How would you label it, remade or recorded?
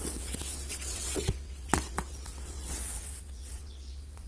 remade